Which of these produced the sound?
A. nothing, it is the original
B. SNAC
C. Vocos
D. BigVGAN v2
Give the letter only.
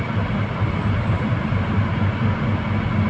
A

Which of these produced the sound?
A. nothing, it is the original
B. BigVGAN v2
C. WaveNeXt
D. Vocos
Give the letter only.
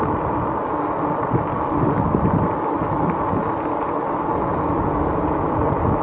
A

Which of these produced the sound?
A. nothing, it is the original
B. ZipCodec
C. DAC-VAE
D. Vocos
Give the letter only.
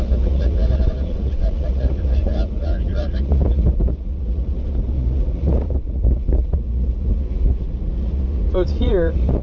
D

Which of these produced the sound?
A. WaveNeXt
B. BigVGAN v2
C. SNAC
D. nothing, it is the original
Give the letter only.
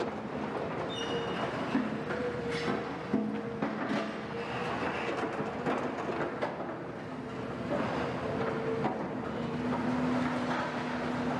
D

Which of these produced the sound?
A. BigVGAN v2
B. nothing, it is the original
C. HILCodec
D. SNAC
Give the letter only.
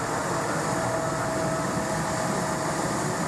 B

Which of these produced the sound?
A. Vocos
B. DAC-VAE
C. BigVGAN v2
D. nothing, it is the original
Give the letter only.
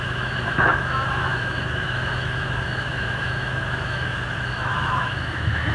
B